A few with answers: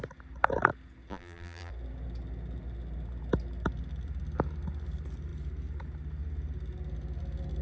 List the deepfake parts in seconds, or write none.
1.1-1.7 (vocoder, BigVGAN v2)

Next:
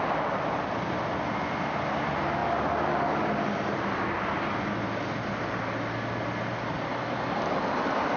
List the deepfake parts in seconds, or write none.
none

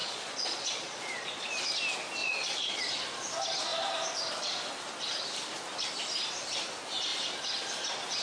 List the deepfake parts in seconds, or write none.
0.0-1.5 (vocoder, Vocos); 2.2-2.8

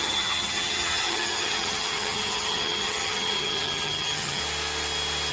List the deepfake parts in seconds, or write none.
0.0-4.4 (vocoder, HiFi-GAN)

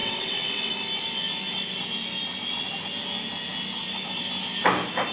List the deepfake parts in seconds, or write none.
0.0-0.7 (vocoder, WaveNeXt)